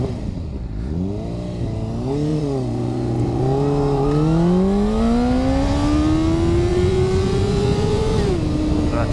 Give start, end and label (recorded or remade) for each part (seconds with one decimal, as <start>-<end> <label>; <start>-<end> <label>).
0.0-2.3 recorded; 2.3-3.4 remade; 3.4-6.7 recorded; 6.7-8.3 remade; 8.3-9.1 recorded